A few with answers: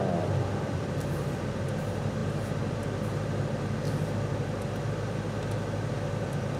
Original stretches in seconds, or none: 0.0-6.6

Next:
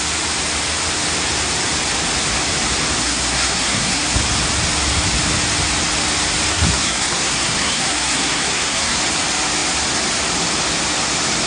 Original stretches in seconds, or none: 0.0-3.0; 4.2-6.5; 9.0-11.5

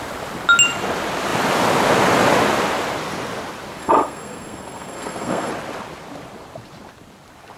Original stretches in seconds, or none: 0.0-3.8; 5.5-7.6

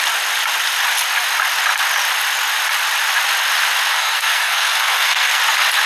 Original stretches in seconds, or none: 0.0-3.9; 5.4-5.9